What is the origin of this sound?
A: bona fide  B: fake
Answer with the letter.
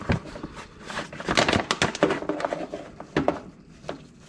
A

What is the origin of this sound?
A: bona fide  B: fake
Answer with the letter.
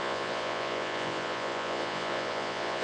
B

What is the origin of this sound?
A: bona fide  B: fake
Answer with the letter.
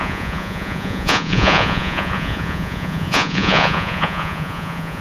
B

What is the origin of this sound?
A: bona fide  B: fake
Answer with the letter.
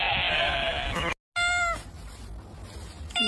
A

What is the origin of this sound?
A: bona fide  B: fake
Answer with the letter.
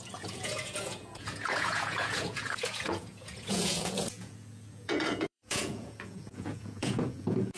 B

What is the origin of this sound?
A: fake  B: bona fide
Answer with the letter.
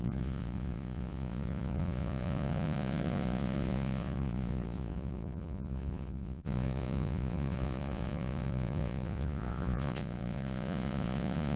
A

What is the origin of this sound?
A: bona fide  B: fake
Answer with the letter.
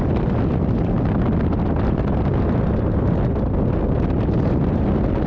A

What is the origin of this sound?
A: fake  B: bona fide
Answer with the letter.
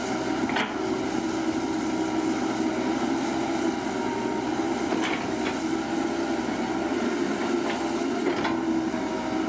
B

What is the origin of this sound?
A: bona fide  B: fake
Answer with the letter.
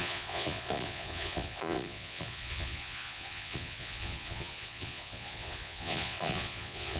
B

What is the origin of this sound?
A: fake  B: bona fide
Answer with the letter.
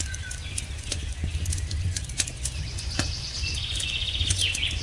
A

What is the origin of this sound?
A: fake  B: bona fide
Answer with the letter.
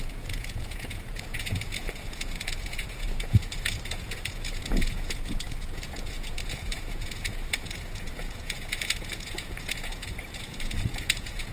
A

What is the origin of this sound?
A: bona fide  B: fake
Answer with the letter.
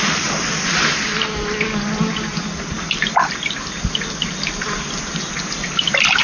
A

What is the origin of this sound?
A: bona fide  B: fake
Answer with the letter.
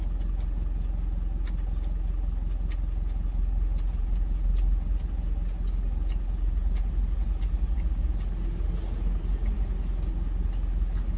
A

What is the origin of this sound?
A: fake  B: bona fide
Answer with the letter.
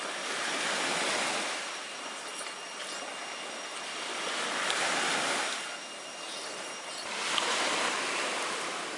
B